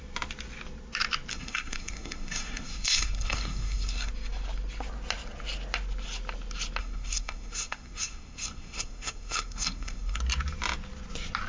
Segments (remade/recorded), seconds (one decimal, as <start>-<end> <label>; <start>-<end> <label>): 0.0-1.3 recorded; 1.3-4.1 remade; 4.1-6.8 recorded; 6.8-10.2 remade; 10.2-11.5 recorded